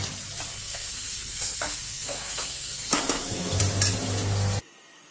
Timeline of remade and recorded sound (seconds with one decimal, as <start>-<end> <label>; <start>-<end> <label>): 0.0-0.5 recorded; 0.5-3.6 remade; 3.6-5.1 recorded